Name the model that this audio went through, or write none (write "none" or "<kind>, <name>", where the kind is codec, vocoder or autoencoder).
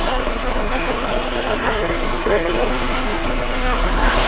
codec, SNAC